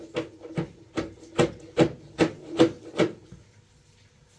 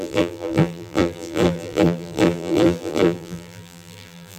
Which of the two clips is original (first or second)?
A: first